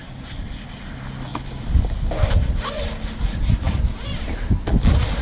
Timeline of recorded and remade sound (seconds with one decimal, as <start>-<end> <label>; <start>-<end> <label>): 0.0-5.2 recorded